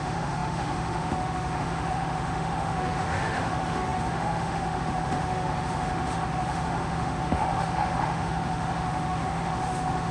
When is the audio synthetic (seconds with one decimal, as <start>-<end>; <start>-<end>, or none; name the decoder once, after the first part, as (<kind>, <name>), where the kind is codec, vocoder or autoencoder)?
0.0-10.1 (autoencoder, DAC-VAE)